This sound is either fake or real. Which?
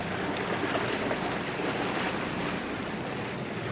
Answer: real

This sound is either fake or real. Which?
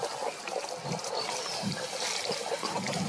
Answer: real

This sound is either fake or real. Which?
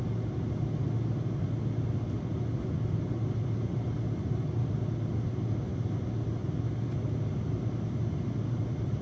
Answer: real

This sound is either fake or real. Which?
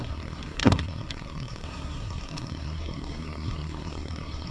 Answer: fake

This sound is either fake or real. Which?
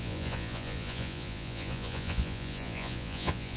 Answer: fake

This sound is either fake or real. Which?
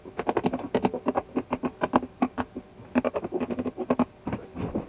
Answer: real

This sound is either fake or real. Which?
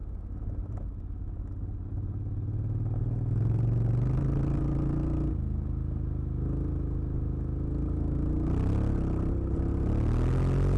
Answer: real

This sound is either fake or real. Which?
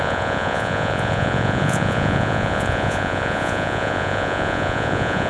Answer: fake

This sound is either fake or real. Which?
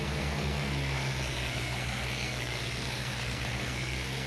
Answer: fake